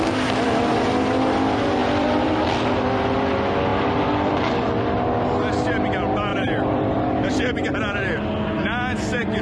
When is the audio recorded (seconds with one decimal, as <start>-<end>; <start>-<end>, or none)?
0.0-1.8; 3.3-3.7; 4.7-6.3; 7.3-9.4